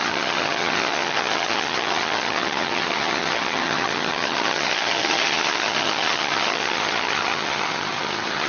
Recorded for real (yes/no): no